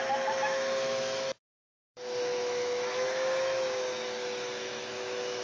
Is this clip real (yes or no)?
no